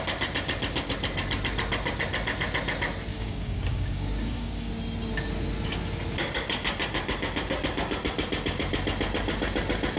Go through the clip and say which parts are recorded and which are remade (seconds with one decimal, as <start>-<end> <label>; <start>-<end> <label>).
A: 0.0-3.1 recorded; 3.1-4.7 remade; 4.7-10.0 recorded